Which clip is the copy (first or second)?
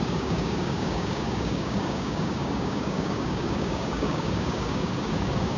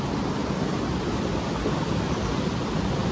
first